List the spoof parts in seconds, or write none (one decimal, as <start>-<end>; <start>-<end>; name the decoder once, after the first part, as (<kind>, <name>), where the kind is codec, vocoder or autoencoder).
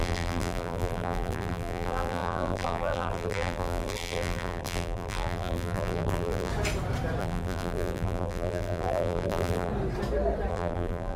0.0-6.5 (vocoder, BigVGAN v2); 7.2-9.7; 10.5-11.2